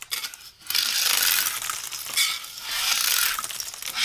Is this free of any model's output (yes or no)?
yes